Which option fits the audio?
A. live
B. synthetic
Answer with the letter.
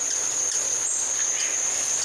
A